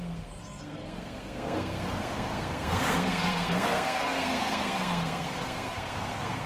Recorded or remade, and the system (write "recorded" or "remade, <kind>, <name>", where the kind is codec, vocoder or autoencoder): remade, codec, SNAC